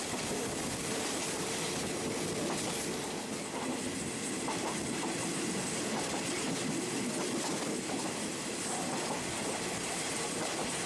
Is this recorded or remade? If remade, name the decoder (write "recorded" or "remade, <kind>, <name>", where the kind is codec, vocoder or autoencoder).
recorded